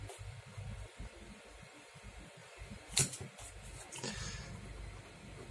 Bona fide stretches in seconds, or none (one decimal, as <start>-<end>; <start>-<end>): 0.0-5.5